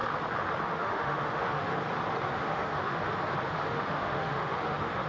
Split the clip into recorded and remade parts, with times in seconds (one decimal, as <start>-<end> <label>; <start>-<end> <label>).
0.0-0.6 recorded; 0.6-1.7 remade; 1.7-2.3 recorded; 2.3-3.1 remade; 3.1-3.7 recorded; 3.7-5.1 remade